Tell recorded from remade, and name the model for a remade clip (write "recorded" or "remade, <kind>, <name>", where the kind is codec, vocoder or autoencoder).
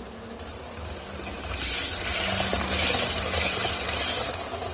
recorded